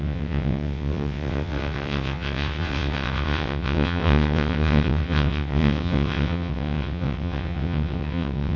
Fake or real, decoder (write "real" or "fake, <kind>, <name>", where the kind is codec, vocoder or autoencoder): fake, vocoder, WaveNeXt